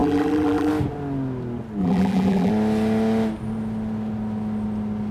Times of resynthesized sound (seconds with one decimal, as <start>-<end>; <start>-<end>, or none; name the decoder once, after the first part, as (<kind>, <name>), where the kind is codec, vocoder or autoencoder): 0.0-0.7 (vocoder, BigVGAN v2); 1.8-2.5